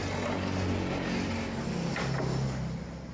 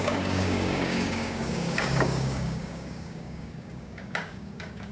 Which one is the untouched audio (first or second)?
first